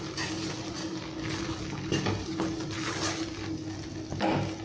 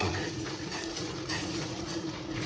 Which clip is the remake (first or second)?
second